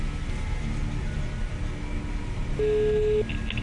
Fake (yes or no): no